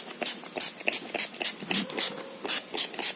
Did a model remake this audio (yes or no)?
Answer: no